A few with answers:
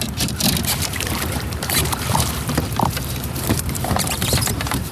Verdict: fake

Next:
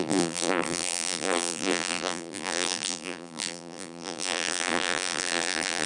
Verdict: fake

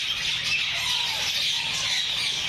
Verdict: real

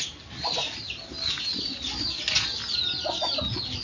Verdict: real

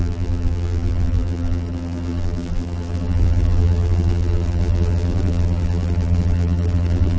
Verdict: fake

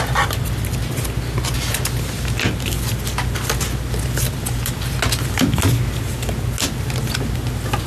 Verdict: real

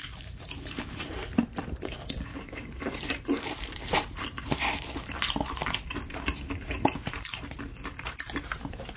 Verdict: fake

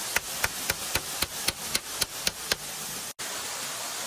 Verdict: real